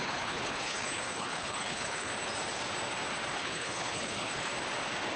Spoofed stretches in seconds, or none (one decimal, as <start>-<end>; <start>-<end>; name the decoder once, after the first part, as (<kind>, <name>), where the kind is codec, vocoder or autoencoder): 0.0-2.1 (codec, HILCodec); 3.3-4.5